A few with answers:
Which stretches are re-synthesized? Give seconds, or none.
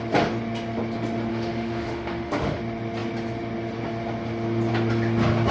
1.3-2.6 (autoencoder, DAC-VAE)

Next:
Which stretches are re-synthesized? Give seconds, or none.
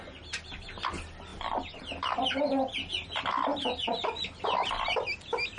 none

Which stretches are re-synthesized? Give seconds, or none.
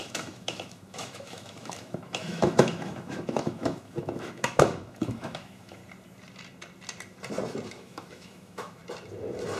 0.0-5.8 (autoencoder, DAC-VAE); 7.7-8.8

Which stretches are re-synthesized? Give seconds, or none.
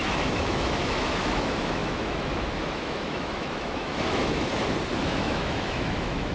0.0-4.5 (autoencoder, DAC-VAE); 5.0-6.3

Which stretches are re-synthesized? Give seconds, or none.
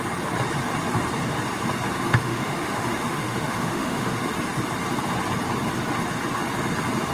2.1-4.3 (autoencoder, DAC-VAE)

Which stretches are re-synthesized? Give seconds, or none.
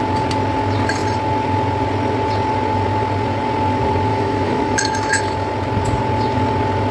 4.1-5.2 (autoencoder, DAC-VAE)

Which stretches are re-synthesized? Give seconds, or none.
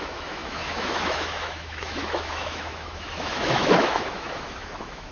0.0-5.1 (autoencoder, DAC-VAE)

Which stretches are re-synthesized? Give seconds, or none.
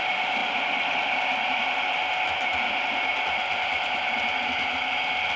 none